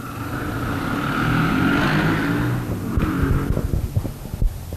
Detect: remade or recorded recorded